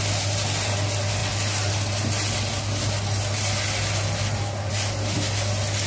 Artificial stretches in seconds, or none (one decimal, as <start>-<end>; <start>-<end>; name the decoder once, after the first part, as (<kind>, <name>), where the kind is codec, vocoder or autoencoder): none